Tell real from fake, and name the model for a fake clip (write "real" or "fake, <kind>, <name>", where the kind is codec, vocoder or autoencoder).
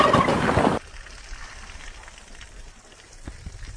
real